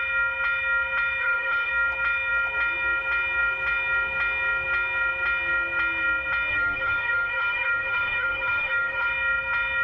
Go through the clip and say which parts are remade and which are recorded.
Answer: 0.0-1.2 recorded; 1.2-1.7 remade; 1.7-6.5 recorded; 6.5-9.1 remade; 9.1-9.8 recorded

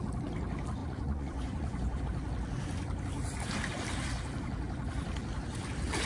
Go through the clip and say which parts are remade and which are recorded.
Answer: 0.0-0.8 recorded; 0.8-2.0 remade; 2.0-6.1 recorded

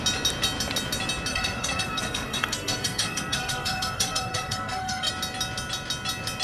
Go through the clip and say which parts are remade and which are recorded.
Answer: 0.0-1.3 recorded; 1.3-5.1 remade; 5.1-6.4 recorded

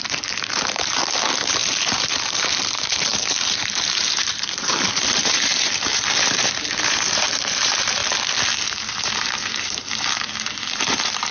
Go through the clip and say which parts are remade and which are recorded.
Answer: 0.0-8.0 remade; 8.0-8.9 recorded; 8.9-11.3 remade